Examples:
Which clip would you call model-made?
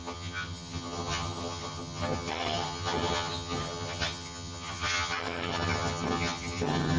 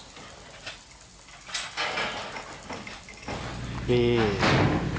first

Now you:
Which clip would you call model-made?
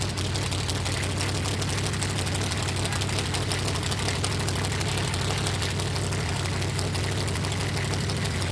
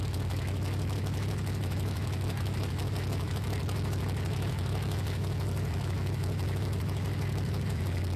second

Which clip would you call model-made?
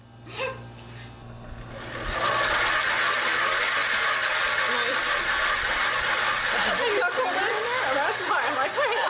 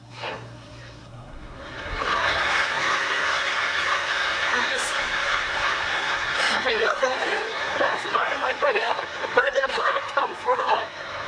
second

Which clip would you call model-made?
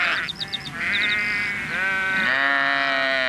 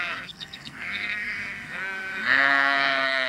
second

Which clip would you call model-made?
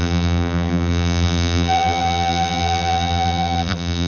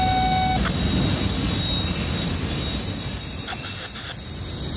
first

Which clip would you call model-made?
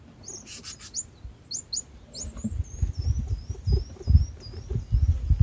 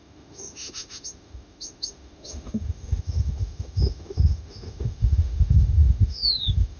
second